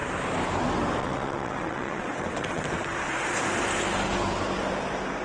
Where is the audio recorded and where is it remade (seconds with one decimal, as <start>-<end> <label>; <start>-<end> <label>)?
0.0-1.0 recorded; 1.0-2.6 remade; 2.6-5.2 recorded